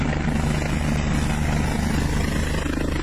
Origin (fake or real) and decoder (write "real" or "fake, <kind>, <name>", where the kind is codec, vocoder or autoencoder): real